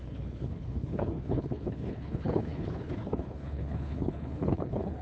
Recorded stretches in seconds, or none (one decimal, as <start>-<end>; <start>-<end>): none